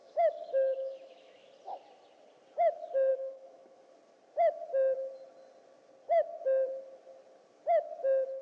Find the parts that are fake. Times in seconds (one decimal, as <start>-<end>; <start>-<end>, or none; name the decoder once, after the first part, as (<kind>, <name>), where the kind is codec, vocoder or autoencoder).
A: 0.0-1.5 (autoencoder, DAC-VAE); 3.1-3.9